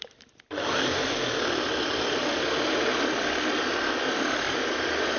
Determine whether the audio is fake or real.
fake